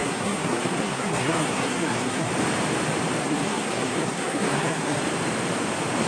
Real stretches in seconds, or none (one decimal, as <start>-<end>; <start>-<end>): 2.3-3.2; 5.0-6.1